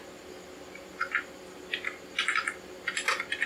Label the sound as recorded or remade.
recorded